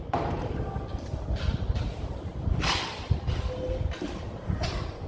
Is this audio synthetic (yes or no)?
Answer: no